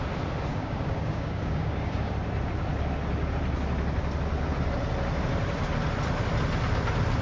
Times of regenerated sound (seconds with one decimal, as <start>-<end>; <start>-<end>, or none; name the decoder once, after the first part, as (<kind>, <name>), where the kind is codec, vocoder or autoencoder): 0.5-2.1 (codec, DAC)